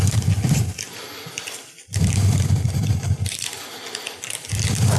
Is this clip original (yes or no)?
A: no